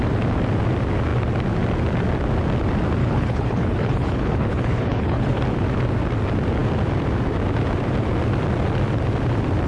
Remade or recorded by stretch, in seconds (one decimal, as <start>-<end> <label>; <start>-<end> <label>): 0.0-3.0 recorded; 3.0-5.4 remade; 5.4-9.7 recorded